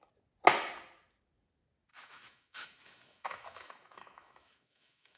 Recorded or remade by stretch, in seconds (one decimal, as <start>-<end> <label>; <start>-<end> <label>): 0.0-1.9 recorded; 1.9-5.2 remade

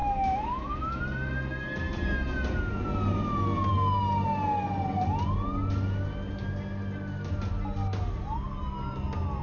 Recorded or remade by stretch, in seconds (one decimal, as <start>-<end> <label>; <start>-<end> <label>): 0.0-1.0 remade; 1.0-9.4 recorded